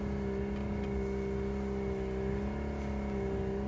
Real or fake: real